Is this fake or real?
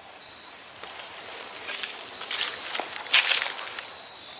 real